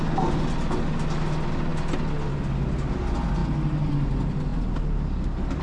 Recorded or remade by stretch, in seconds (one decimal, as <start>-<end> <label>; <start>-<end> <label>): 0.0-5.6 recorded